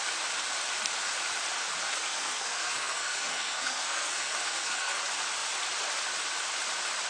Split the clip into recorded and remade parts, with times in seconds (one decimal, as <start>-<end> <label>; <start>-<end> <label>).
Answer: 0.0-1.9 recorded; 1.9-5.0 remade; 5.0-7.1 recorded